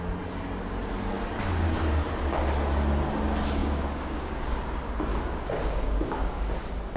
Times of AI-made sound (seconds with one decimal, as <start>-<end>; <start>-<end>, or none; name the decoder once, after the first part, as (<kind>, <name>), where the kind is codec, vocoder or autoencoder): 3.6-4.5 (codec, DAC); 5.1-6.5

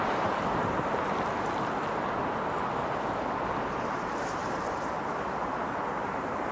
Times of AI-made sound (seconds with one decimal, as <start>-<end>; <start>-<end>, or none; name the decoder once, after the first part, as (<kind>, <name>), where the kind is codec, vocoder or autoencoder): 0.0-1.1 (vocoder, BigVGAN v2); 3.1-6.5

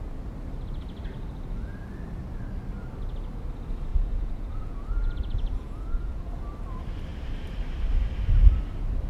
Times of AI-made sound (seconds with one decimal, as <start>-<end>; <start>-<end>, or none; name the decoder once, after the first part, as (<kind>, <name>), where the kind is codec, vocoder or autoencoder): 3.9-6.3 (vocoder, Vocos)

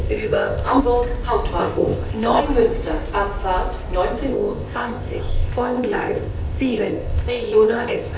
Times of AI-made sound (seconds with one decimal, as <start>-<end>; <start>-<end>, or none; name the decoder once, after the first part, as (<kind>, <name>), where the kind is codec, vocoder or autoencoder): 0.0-0.8 (codec, ZipCodec); 1.6-2.4; 4.3-8.2

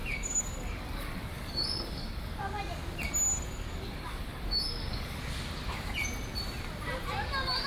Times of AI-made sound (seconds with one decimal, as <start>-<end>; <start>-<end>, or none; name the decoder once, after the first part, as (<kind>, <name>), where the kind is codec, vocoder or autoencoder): 0.0-2.4 (codec, DAC); 3.3-5.2

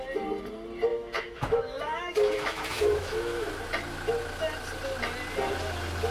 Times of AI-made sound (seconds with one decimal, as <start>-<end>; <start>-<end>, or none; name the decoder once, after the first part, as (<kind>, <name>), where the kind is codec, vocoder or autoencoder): 0.9-3.5 (autoencoder, DAC-VAE)

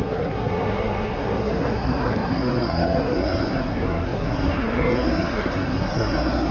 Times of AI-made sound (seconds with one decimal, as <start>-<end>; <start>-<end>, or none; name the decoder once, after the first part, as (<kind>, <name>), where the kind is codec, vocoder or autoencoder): 0.0-6.5 (codec, SNAC)